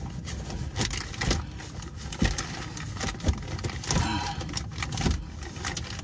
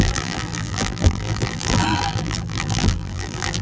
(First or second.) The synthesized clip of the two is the second